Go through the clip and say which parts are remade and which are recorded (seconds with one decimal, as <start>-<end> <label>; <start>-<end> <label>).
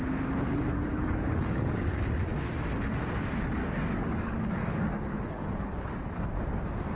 0.0-0.9 recorded; 0.9-1.9 remade; 1.9-3.6 recorded; 3.6-6.0 remade; 6.0-7.0 recorded